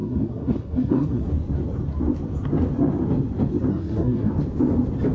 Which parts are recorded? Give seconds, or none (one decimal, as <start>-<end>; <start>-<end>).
1.3-3.7; 4.3-5.1